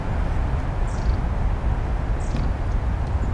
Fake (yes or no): no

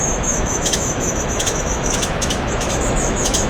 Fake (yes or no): yes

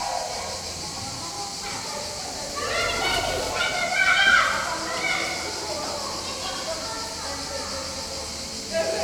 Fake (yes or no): no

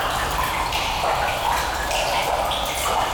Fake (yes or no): no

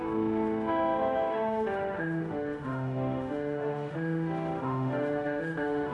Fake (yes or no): yes